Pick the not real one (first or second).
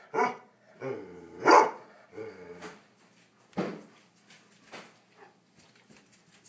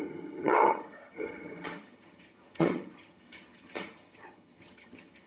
second